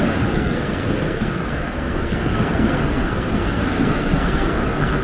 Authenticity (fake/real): fake